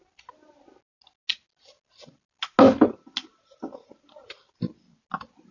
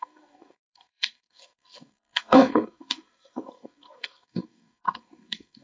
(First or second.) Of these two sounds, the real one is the first